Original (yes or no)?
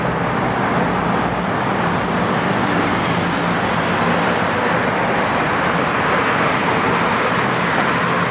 yes